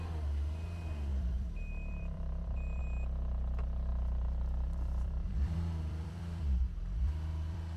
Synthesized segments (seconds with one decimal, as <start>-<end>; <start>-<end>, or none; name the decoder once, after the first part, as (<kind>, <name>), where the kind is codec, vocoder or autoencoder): 1.1-2.8 (vocoder, BigVGAN v2); 3.9-7.8